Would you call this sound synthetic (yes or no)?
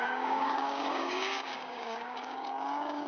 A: yes